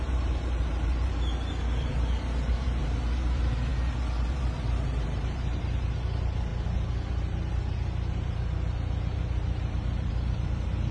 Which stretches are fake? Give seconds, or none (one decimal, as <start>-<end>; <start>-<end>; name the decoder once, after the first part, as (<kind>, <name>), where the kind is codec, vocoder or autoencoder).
0.0-3.7 (vocoder, BigVGAN v2); 4.3-6.5; 7.5-10.9